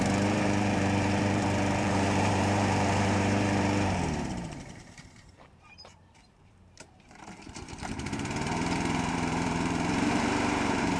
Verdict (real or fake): fake